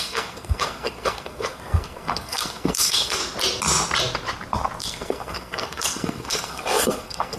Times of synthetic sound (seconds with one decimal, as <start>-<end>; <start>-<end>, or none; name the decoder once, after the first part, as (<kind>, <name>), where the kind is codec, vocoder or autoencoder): 0.0-3.2 (codec, SNAC); 4.8-7.4